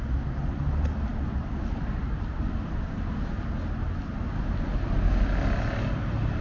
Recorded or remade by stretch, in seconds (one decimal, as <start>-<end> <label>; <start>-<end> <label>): 0.0-6.4 recorded